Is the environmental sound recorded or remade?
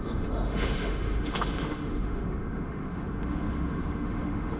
remade